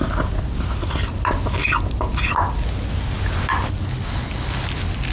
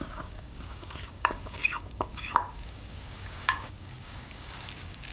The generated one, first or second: second